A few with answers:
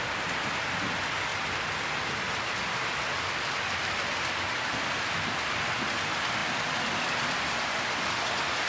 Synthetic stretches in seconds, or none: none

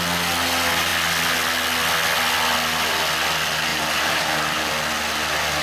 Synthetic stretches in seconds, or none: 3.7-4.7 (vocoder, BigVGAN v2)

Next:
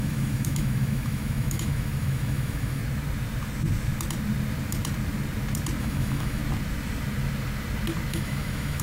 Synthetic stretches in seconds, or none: 0.0-2.8 (autoencoder, DAC-VAE); 5.8-6.4; 8.1-8.8

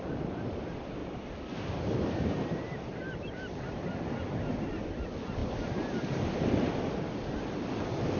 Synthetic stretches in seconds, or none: 1.0-3.7 (vocoder, BigVGAN v2)